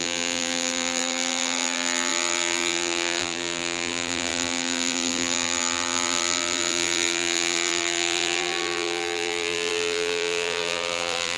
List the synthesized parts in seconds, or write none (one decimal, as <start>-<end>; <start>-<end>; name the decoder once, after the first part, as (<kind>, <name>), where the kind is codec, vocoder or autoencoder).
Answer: 0.0-11.4 (vocoder, BigVGAN v2)

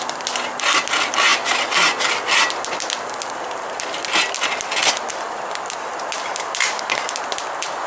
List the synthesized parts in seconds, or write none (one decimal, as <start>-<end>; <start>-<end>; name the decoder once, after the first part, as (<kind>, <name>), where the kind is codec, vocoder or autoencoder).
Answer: none

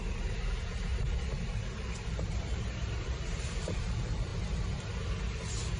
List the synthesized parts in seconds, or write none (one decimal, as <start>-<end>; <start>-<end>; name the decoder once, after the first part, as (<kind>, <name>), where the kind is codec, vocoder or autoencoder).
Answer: 0.0-4.3 (vocoder, BigVGAN v2); 5.2-5.8

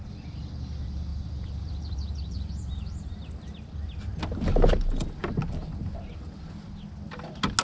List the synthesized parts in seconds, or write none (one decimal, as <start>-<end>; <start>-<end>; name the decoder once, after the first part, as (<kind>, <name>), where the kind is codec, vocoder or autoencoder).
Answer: 1.1-3.3 (vocoder, BigVGAN v2)

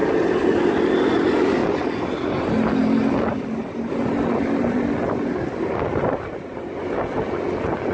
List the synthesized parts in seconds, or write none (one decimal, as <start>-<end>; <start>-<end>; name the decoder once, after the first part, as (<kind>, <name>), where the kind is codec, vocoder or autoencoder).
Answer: 1.6-2.1 (vocoder, BigVGAN v2); 2.8-6.9

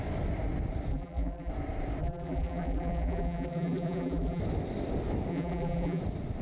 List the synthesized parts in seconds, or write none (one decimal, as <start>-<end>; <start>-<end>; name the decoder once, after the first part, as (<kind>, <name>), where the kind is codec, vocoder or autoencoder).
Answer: 0.9-1.5 (vocoder, BigVGAN v2); 2.0-4.4; 5.3-6.0

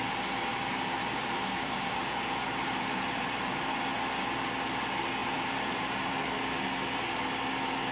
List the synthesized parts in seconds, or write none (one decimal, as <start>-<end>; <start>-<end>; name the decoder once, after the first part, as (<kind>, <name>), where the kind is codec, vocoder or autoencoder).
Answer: 0.5-3.7 (vocoder, BigVGAN v2); 5.2-6.2